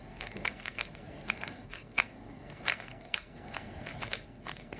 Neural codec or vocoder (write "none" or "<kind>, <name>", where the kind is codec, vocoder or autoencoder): codec, SNAC